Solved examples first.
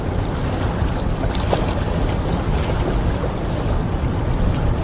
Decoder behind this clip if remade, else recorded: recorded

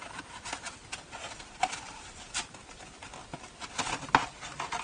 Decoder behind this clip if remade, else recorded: recorded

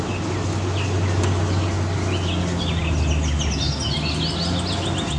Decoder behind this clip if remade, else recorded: recorded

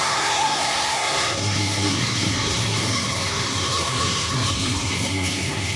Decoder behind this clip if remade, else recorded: remade, codec, SNAC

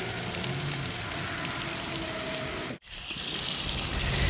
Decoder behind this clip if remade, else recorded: recorded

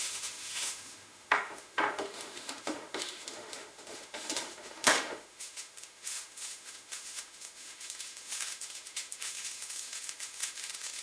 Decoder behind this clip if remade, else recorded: remade, autoencoder, DAC-VAE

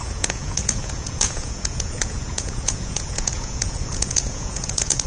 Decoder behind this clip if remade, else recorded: remade, vocoder, Vocos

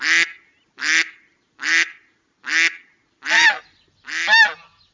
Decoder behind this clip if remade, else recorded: recorded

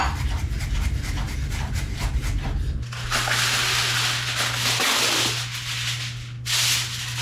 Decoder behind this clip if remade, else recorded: recorded